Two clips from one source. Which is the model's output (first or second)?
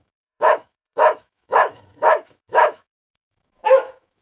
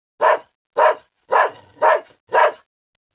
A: first